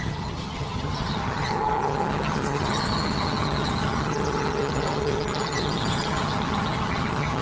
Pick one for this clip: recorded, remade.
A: remade